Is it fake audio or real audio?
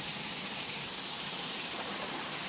fake